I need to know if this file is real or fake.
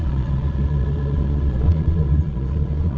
fake